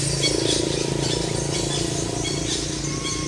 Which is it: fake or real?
real